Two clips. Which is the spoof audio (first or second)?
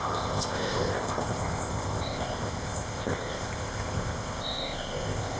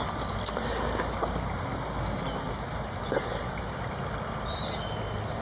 first